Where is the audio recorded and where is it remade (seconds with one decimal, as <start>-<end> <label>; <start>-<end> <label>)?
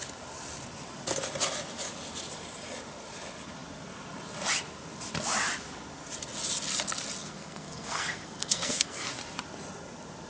0.0-7.2 recorded; 7.2-9.1 remade; 9.1-10.3 recorded